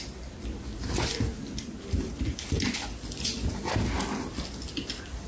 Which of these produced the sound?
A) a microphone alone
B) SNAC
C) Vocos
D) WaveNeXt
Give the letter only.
A